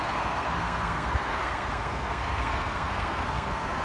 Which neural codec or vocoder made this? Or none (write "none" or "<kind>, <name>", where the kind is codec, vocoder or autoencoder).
codec, SNAC